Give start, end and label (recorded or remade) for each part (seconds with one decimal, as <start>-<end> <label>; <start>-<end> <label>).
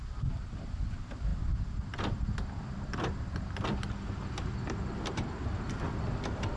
0.0-6.6 recorded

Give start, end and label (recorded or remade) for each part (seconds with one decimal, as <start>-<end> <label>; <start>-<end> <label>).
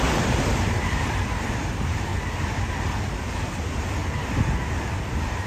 0.0-2.1 remade; 2.1-3.0 recorded; 3.0-4.0 remade; 4.0-4.6 recorded; 4.6-5.5 remade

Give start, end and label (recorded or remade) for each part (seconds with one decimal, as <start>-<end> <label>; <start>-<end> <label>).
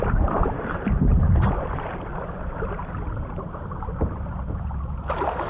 0.0-1.1 recorded; 1.1-4.4 remade; 4.4-5.5 recorded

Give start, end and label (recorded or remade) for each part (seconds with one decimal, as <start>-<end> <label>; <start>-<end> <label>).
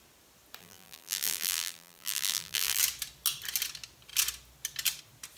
0.0-0.6 recorded; 0.6-2.8 remade; 2.8-5.4 recorded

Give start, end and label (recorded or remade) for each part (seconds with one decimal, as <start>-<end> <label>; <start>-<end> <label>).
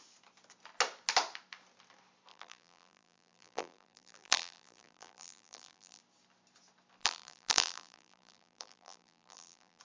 0.0-2.3 recorded; 2.3-6.0 remade; 6.0-7.0 recorded; 7.0-9.8 remade